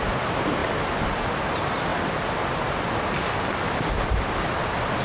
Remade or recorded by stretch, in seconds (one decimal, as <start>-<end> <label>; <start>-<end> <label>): 0.0-5.0 recorded